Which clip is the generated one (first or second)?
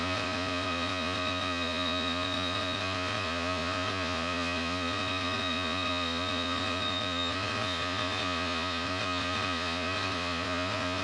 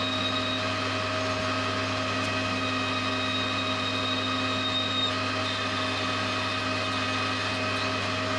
first